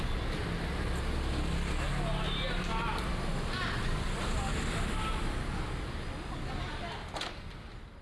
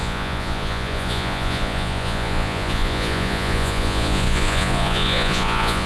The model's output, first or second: second